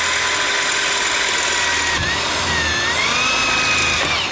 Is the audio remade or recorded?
recorded